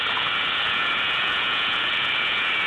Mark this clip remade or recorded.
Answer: remade